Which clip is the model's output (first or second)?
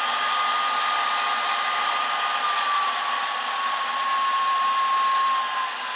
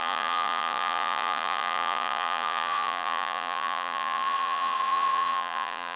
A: second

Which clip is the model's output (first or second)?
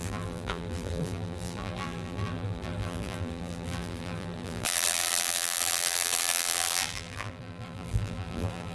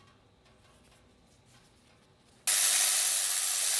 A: first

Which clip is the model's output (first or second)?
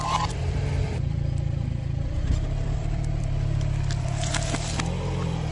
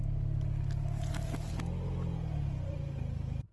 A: first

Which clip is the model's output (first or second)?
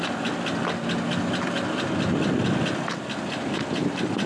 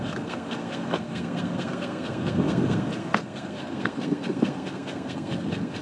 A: second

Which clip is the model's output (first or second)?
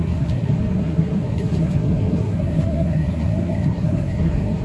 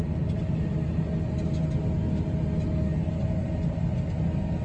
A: first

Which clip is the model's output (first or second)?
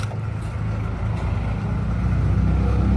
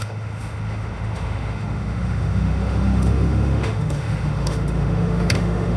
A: second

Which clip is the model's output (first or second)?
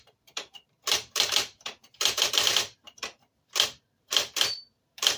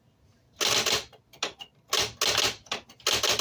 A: first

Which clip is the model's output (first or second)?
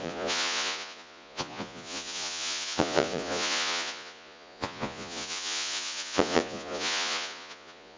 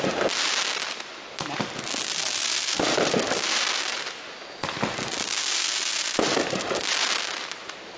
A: first